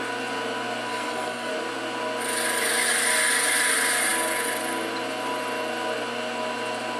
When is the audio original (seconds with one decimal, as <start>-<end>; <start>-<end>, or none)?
0.0-0.9; 1.5-7.0